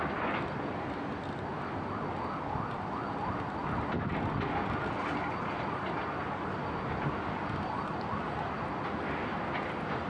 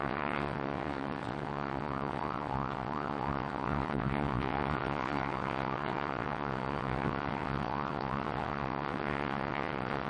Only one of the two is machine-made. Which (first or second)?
second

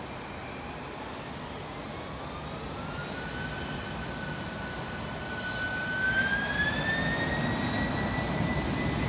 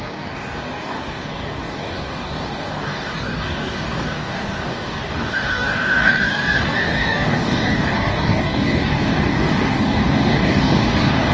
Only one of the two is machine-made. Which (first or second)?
second